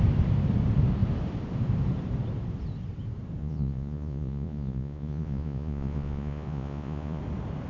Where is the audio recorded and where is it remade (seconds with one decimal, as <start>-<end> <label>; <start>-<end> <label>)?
0.0-3.4 recorded; 3.4-7.2 remade; 7.2-7.7 recorded

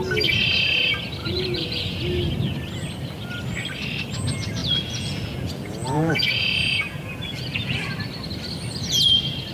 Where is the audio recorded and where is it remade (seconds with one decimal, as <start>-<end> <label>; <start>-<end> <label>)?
0.0-1.2 recorded; 1.2-2.0 remade; 2.0-4.6 recorded; 4.6-7.9 remade; 7.9-9.5 recorded

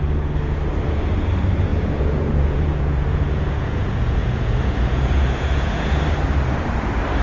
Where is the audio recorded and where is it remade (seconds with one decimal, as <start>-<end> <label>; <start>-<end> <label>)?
0.0-1.7 recorded; 1.7-6.0 remade; 6.0-7.2 recorded

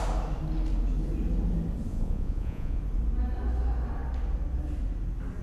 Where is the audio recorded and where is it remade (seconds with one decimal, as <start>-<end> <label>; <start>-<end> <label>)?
0.0-1.9 recorded; 1.9-2.8 remade; 2.8-5.4 recorded

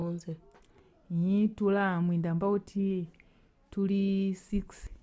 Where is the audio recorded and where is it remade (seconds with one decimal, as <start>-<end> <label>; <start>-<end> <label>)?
0.0-5.0 recorded